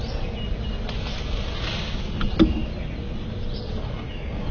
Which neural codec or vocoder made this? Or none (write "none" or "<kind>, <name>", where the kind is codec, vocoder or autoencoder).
none